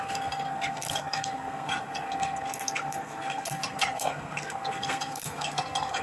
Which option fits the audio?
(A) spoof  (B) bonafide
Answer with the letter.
A